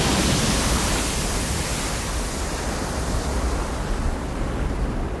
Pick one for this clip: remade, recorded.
recorded